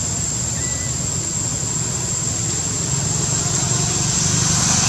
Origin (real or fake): real